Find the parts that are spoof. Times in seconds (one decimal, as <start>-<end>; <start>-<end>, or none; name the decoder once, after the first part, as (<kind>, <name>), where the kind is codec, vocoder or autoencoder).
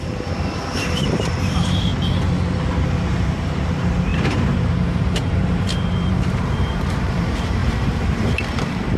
0.0-1.9 (vocoder, BigVGAN v2); 2.6-9.0